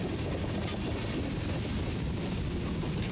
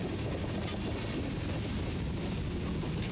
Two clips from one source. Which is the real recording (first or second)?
second